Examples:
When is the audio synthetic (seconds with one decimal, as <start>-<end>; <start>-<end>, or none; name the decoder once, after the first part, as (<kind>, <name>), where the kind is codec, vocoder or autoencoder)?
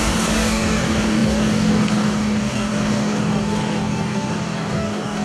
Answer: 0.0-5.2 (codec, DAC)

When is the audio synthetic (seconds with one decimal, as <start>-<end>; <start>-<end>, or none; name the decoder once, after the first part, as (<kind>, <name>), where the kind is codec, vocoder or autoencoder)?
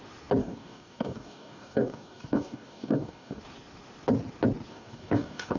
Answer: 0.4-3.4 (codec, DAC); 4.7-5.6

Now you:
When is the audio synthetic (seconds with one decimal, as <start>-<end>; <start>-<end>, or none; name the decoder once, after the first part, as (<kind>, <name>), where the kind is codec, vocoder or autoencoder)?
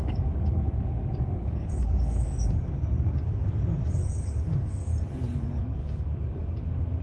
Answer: 0.0-4.9 (codec, DAC); 5.6-7.0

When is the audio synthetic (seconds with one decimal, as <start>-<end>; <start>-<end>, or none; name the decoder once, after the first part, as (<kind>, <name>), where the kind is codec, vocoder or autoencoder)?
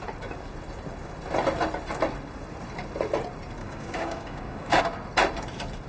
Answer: 3.6-4.8 (codec, DAC)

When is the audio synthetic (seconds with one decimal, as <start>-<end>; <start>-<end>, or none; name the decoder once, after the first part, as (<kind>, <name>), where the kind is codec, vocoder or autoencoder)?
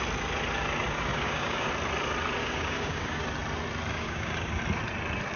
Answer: 1.1-1.7 (codec, DAC); 2.4-3.2; 3.9-4.6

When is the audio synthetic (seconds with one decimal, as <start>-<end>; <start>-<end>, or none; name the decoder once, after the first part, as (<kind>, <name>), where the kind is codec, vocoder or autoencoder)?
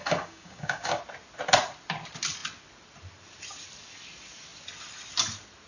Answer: 0.0-1.0 (codec, DAC)